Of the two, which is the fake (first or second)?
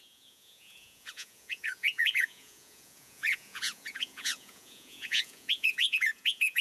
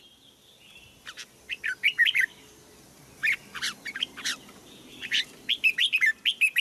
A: first